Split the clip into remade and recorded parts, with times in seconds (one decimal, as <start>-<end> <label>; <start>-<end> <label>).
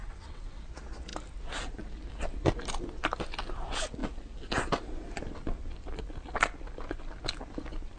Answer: 0.0-0.6 remade; 0.6-8.0 recorded